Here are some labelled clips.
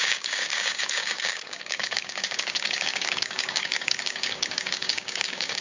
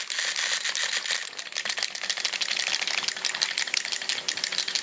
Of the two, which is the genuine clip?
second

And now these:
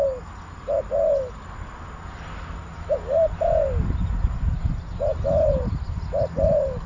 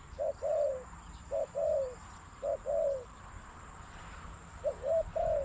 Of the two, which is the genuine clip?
first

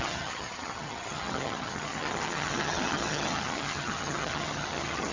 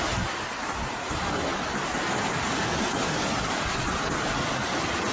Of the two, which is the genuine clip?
second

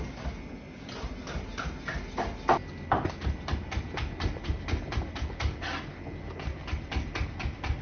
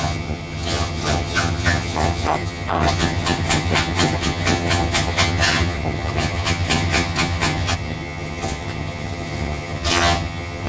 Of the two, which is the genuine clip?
first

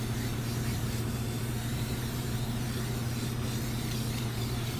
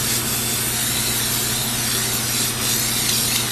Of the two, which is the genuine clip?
second